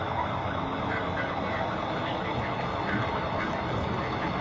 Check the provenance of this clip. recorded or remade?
recorded